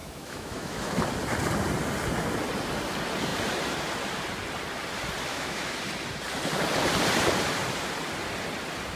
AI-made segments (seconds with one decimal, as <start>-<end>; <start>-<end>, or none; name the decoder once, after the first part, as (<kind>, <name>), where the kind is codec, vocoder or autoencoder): 0.0-0.9 (autoencoder, DAC-VAE); 5.3-5.8